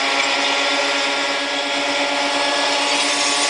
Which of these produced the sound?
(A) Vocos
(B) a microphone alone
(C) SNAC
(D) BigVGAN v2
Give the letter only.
B